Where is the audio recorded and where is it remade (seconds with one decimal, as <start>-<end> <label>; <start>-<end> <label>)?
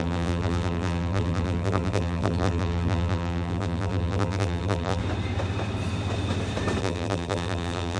0.0-5.0 remade; 5.0-6.8 recorded; 6.8-8.0 remade